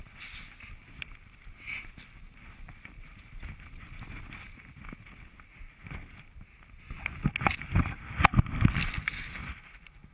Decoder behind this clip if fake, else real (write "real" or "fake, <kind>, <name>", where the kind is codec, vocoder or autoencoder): real